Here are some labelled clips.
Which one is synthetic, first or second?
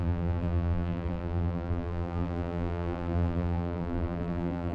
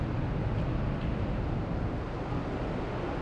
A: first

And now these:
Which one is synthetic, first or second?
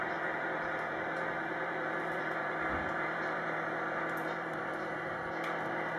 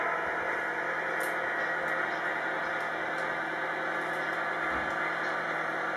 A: first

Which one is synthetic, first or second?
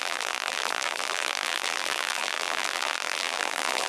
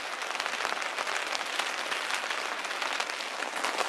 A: first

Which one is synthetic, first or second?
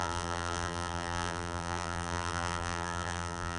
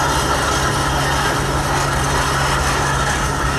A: first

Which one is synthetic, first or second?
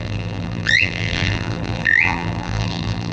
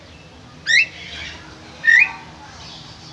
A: first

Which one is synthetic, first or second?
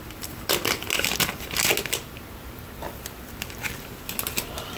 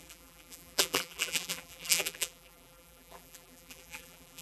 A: second